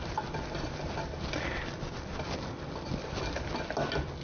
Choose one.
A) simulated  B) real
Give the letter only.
B